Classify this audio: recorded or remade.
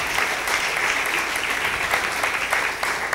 recorded